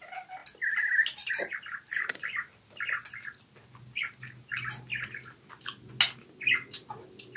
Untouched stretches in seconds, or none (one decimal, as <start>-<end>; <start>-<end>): 0.0-7.4